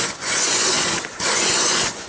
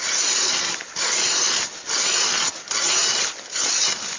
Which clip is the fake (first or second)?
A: first